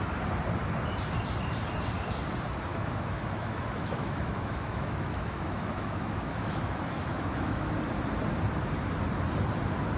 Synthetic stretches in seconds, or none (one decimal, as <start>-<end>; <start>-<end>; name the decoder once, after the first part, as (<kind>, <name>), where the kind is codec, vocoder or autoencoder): 2.7-7.7 (autoencoder, DAC-VAE)